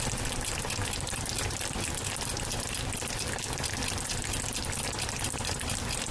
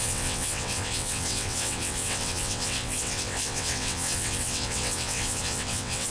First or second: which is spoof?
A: second